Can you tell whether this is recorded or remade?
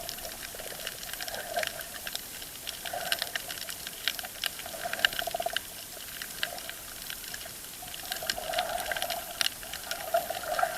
recorded